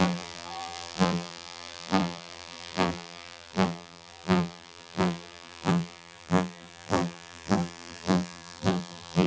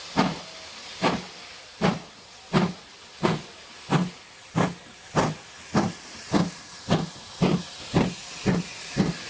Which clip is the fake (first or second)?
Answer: first